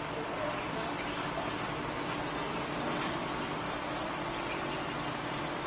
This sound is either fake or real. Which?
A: fake